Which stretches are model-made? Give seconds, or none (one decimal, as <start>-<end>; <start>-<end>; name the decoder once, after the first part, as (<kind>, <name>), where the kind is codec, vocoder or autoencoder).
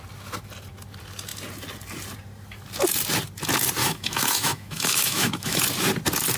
3.8-5.6 (autoencoder, DAC-VAE)